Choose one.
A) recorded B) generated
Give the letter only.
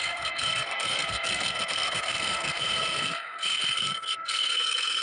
B